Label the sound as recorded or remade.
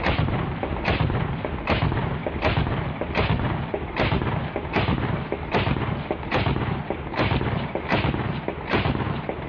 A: recorded